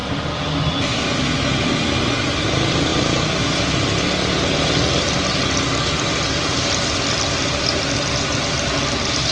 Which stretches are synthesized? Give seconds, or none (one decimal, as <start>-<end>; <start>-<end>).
none